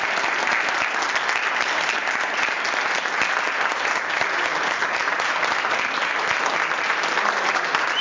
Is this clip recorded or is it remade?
recorded